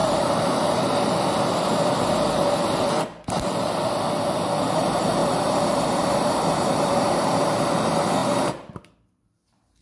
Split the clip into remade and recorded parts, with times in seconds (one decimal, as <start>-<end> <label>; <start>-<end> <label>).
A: 0.0-0.7 remade; 0.7-5.2 recorded; 5.2-7.8 remade; 7.8-8.2 recorded; 8.2-8.9 remade; 8.9-9.8 recorded